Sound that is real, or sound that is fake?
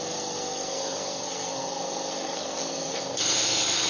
fake